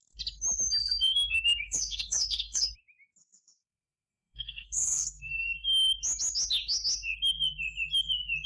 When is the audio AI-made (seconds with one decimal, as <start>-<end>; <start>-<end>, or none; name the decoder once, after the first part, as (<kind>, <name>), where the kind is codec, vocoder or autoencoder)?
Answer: 0.8-2.7 (codec, SNAC); 3.2-5.3